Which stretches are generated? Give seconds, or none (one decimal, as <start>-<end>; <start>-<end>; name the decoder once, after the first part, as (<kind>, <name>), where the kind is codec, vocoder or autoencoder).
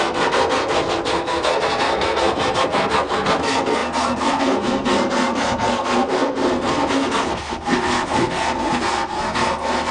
0.0-9.9 (codec, SNAC)